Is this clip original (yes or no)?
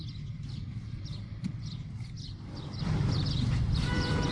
no